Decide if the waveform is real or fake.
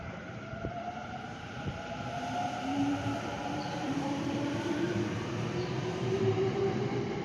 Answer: fake